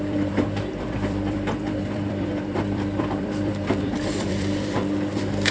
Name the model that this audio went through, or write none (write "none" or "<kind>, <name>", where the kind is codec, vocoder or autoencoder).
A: vocoder, BigVGAN v2